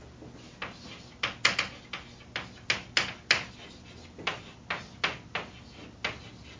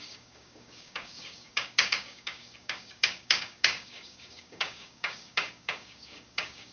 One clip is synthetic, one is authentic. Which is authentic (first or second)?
first